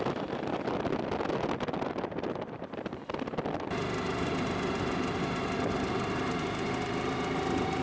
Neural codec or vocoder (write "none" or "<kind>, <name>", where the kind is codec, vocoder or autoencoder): none